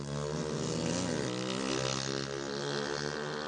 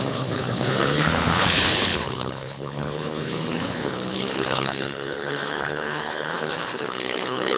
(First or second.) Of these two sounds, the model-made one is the second